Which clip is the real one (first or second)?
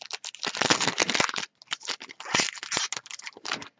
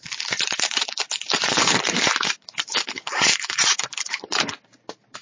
first